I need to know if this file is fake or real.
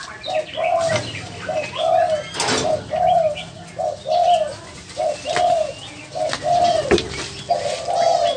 real